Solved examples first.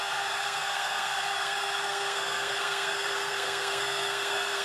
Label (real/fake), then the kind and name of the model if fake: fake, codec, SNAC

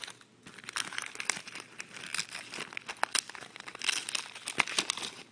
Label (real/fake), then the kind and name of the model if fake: real